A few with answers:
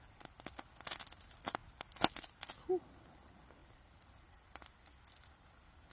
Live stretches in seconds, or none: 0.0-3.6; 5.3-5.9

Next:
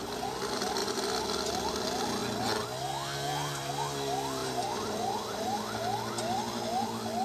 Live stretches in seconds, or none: 0.0-4.4; 5.6-7.2

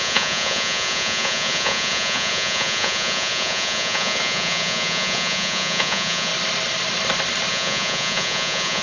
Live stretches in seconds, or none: 6.3-7.5